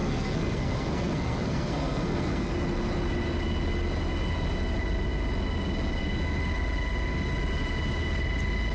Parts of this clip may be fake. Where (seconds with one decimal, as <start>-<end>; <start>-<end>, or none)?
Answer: 0.0-2.5